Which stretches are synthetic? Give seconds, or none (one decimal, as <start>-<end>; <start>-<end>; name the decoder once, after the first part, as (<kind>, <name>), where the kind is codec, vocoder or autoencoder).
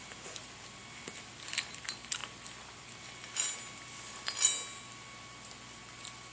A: none